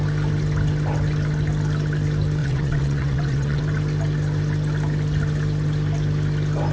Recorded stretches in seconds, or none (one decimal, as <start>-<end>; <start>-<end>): 0.0-2.4; 3.6-6.7